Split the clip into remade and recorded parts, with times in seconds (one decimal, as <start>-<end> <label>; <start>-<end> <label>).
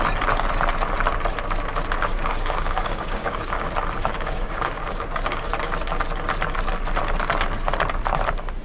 0.0-2.1 recorded; 2.1-3.6 remade; 3.6-4.0 recorded; 4.0-5.5 remade; 5.5-8.6 recorded